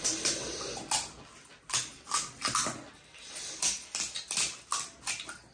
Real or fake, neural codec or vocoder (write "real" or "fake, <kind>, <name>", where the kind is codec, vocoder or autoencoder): real